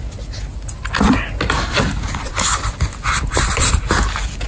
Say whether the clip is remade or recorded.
recorded